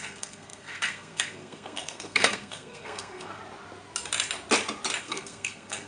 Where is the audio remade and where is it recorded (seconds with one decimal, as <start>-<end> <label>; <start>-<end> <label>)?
0.0-3.4 remade; 3.4-5.0 recorded; 5.0-5.9 remade